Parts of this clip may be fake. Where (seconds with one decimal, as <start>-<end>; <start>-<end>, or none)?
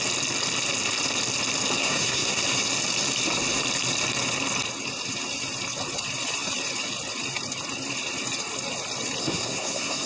1.8-2.4; 9.2-10.1